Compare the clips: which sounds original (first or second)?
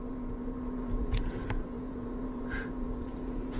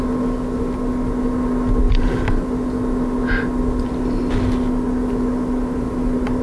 second